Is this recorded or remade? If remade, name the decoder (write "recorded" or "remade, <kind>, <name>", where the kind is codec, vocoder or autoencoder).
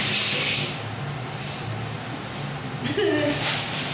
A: recorded